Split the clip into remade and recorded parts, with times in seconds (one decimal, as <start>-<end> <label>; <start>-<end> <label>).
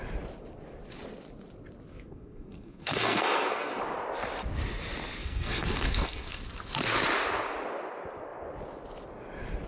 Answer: 0.0-1.9 recorded; 1.9-3.8 remade; 3.8-5.2 recorded; 5.2-6.4 remade; 6.4-9.7 recorded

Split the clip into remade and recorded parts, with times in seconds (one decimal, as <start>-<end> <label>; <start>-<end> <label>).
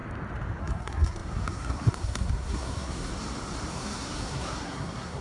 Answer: 0.0-0.6 recorded; 0.6-3.1 remade; 3.1-3.7 recorded; 3.7-5.2 remade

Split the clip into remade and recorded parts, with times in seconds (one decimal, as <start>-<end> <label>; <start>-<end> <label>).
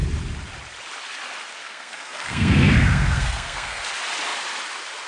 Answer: 0.0-1.6 recorded; 1.6-3.9 remade; 3.9-5.1 recorded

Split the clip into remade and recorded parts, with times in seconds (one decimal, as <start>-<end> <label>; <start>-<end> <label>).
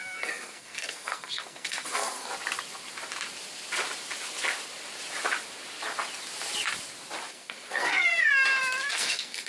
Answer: 0.0-2.3 remade; 2.3-7.3 recorded; 7.3-8.3 remade; 8.3-8.9 recorded; 8.9-9.5 remade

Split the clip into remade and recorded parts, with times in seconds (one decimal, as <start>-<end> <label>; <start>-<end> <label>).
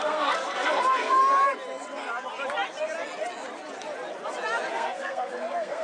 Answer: 0.0-1.2 remade; 1.2-4.7 recorded; 4.7-5.8 remade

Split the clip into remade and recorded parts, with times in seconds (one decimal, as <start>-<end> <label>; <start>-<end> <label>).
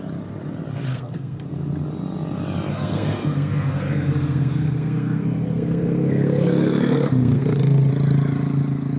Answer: 0.0-0.9 recorded; 0.9-1.5 remade; 1.5-2.7 recorded; 2.7-7.9 remade; 7.9-9.0 recorded